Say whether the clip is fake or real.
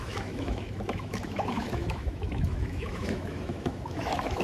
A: fake